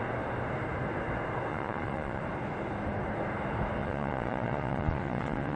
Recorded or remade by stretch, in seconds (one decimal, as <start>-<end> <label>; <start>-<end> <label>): 0.0-1.5 recorded; 1.5-2.2 remade; 2.2-3.8 recorded; 3.8-5.6 remade